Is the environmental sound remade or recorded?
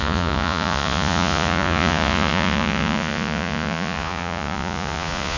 remade